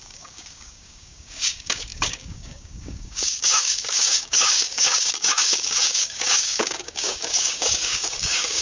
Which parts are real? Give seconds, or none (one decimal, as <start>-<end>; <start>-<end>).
none